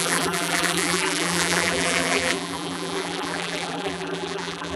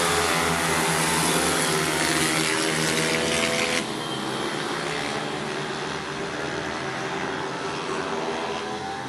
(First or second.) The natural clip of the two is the second